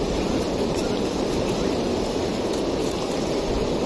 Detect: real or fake real